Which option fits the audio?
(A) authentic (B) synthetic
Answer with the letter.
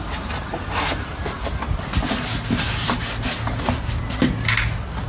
A